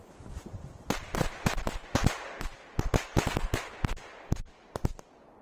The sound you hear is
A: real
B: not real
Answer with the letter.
A